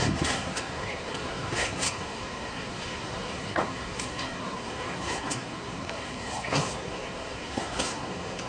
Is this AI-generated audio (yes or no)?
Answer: yes